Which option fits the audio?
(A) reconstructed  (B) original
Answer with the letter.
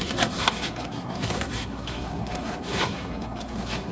A